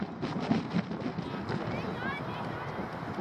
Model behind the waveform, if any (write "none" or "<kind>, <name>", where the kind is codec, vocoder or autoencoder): none